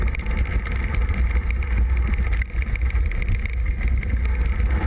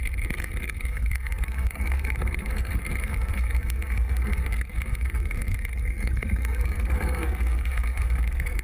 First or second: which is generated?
second